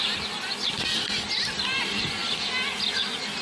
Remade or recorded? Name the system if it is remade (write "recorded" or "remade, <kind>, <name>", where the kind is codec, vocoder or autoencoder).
recorded